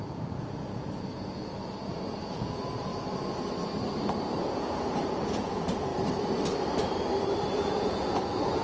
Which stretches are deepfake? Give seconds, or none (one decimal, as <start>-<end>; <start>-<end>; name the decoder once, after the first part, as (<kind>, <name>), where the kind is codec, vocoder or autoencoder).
0.0-2.9 (vocoder, Vocos); 4.4-5.9; 7.6-8.6